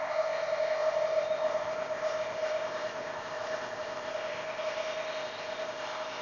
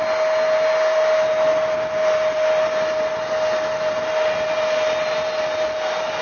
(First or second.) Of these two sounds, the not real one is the first